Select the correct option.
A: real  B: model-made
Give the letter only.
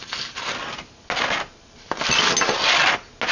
A